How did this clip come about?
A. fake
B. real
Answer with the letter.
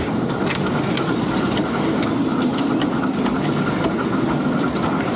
B